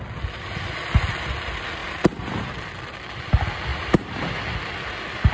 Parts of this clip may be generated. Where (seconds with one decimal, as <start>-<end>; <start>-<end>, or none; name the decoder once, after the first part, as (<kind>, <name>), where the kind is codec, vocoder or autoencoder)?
1.8-2.5 (vocoder, BigVGAN v2); 3.7-4.4